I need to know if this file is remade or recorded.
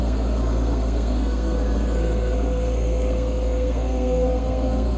remade